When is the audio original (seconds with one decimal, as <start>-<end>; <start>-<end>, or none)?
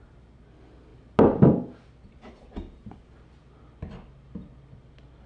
0.0-5.3